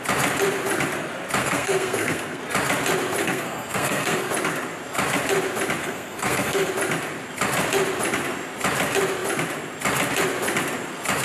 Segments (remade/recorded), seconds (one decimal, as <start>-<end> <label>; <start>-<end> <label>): 0.0-1.4 recorded; 1.4-2.4 remade; 2.4-3.2 recorded; 3.2-4.3 remade; 4.3-5.8 recorded; 5.8-6.7 remade; 6.7-11.2 recorded